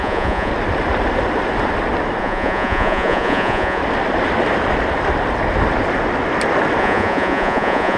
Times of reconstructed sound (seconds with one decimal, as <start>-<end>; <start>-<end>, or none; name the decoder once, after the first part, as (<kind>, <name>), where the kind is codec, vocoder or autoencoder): 0.0-0.5 (vocoder, Vocos); 2.2-3.8; 6.8-8.0